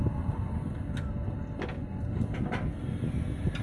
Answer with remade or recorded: recorded